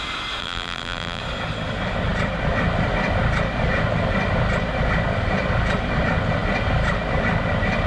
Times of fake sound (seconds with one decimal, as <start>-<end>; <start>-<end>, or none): 0.4-1.2